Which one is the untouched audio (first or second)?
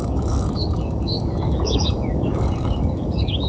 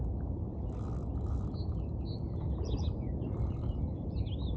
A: second